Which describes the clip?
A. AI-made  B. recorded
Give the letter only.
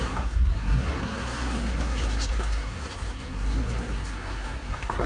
A